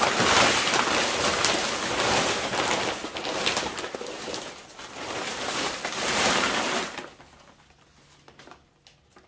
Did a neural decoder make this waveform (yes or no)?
no